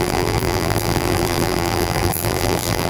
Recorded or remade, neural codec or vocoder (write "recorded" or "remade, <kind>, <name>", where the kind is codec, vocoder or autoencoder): remade, vocoder, BigVGAN v2